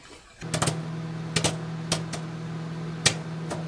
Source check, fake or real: real